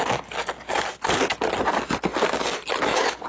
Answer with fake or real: real